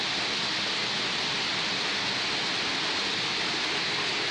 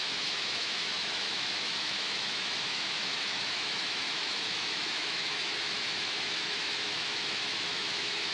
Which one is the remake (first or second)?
second